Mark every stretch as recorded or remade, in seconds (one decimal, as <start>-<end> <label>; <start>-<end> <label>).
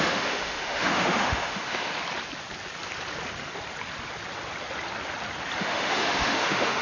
0.0-1.9 remade; 1.9-5.6 recorded; 5.6-6.8 remade